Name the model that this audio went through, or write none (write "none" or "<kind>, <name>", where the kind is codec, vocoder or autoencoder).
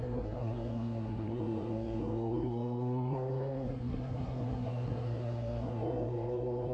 codec, SNAC